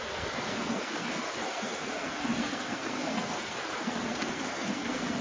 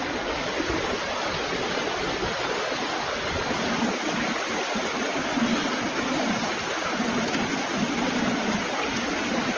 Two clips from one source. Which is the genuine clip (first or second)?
second